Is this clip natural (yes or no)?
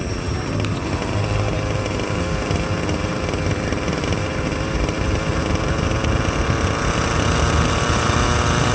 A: yes